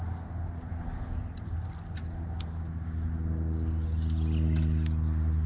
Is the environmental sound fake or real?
real